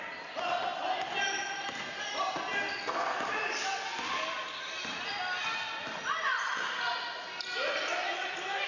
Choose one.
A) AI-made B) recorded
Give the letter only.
B